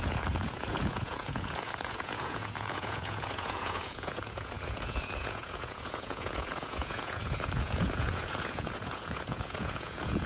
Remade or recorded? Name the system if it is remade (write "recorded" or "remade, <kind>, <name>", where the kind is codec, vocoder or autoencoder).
remade, vocoder, Vocos